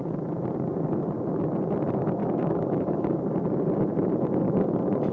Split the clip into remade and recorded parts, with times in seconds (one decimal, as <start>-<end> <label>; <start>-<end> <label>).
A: 0.0-2.2 recorded; 2.2-3.2 remade; 3.2-5.1 recorded